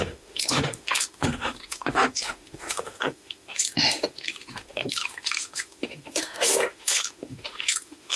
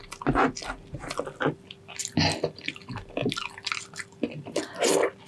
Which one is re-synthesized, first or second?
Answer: first